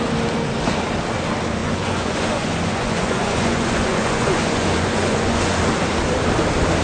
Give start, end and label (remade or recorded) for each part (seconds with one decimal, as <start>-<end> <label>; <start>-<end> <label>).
0.0-1.6 recorded; 1.6-5.6 remade; 5.6-6.8 recorded